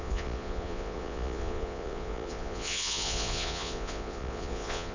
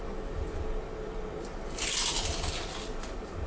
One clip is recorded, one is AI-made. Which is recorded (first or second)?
second